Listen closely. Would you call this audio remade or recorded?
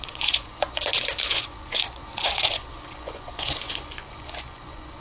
remade